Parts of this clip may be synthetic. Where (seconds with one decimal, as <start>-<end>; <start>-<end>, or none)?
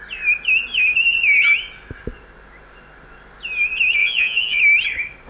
4.0-4.6